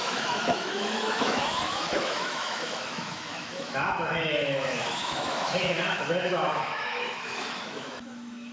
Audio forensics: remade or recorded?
remade